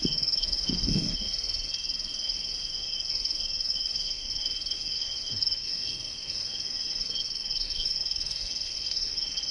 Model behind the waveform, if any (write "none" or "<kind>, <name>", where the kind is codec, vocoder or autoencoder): codec, SNAC